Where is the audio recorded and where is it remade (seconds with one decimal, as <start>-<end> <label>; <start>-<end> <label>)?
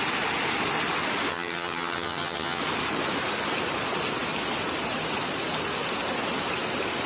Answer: 0.0-1.3 recorded; 1.3-2.6 remade; 2.6-7.1 recorded